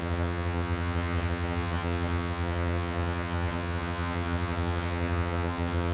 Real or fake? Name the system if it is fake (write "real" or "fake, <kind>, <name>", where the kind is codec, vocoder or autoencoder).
fake, vocoder, HiFi-GAN